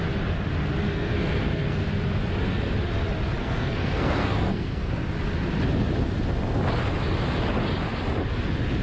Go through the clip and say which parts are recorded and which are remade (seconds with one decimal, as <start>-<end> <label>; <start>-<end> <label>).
0.0-0.8 recorded; 0.8-1.8 remade; 1.8-3.4 recorded; 3.4-4.9 remade; 4.9-8.8 recorded